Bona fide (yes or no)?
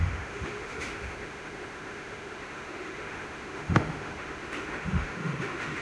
no